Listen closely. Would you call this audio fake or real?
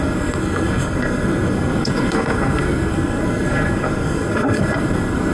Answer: fake